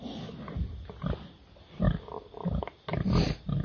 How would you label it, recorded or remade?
recorded